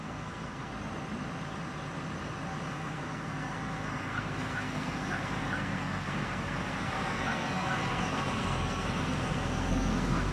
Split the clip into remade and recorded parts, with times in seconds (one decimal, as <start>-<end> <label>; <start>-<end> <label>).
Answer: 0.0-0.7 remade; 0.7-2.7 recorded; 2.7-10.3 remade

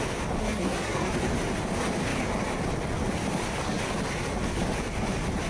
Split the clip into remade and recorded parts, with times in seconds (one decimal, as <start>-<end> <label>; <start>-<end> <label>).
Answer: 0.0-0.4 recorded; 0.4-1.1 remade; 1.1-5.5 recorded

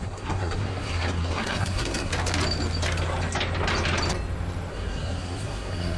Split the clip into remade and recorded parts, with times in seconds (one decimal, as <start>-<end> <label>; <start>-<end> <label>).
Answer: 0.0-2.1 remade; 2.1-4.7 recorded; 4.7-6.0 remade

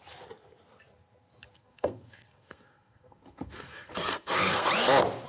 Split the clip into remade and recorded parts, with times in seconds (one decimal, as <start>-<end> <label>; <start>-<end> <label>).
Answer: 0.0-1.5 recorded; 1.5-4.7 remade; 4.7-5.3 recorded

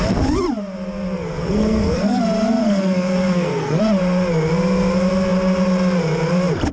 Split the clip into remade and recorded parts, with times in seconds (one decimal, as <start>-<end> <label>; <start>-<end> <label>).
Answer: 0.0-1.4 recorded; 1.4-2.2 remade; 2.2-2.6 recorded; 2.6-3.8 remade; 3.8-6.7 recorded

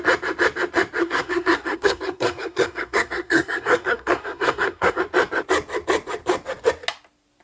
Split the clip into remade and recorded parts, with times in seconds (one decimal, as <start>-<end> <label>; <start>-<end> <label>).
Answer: 0.0-1.0 recorded; 1.0-5.0 remade; 5.0-7.4 recorded